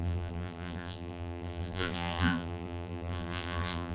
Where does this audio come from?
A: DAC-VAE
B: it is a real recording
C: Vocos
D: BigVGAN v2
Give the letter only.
D